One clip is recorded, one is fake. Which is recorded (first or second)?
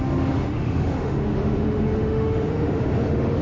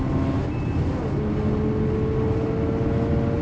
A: second